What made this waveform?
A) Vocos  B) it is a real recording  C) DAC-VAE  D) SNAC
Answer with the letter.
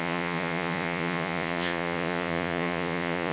A